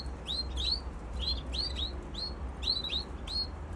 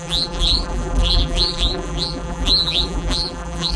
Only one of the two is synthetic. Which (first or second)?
second